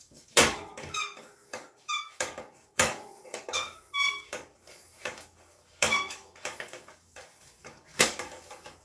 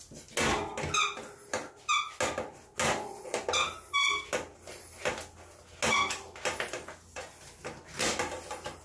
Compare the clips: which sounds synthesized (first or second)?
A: first